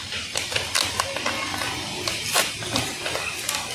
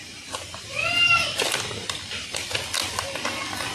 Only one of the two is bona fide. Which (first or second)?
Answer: first